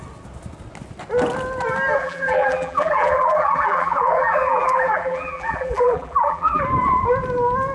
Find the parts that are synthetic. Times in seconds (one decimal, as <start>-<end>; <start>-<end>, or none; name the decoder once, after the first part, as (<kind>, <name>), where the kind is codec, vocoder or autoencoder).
2.0-6.6 (vocoder, BigVGAN v2)